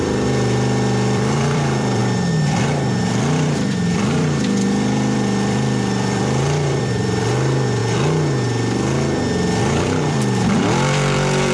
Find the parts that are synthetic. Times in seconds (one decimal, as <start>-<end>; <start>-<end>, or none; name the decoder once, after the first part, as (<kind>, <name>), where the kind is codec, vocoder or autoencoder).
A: 0.0-7.8 (vocoder, BigVGAN v2); 9.6-11.5